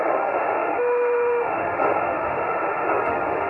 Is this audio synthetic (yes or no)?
yes